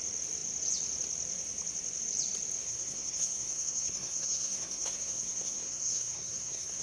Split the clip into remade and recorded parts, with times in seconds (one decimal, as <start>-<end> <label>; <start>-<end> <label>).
0.0-2.6 recorded; 2.6-6.8 remade